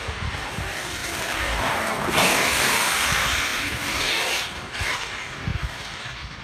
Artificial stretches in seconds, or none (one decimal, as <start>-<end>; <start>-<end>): 0.0-6.4